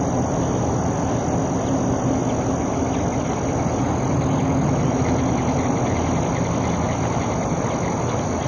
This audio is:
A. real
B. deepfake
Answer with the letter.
A